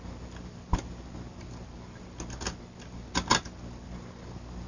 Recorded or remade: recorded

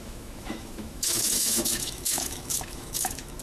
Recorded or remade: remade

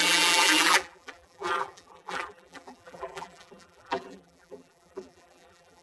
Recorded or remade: remade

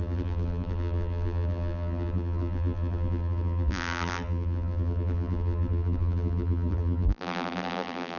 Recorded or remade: remade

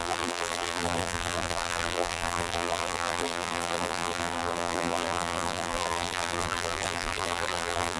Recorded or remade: remade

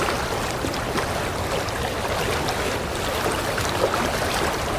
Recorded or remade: recorded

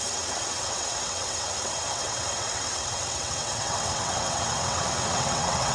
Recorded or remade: remade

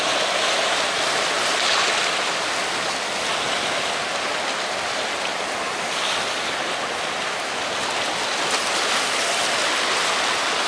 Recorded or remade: recorded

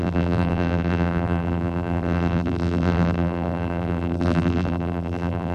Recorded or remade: remade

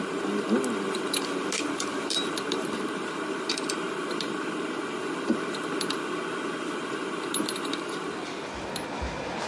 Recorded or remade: recorded